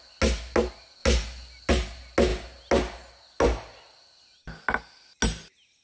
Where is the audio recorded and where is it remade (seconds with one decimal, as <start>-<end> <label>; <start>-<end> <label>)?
0.0-5.8 recorded